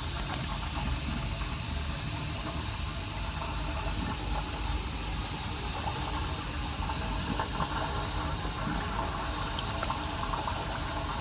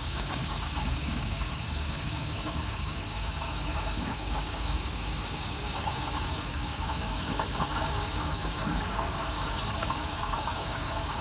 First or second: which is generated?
second